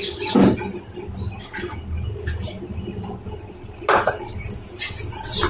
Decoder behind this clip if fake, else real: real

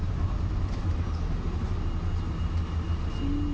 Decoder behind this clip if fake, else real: real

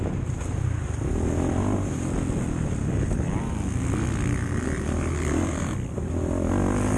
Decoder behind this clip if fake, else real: real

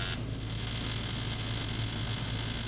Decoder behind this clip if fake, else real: real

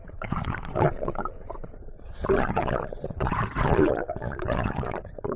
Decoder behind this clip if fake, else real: fake, vocoder, Vocos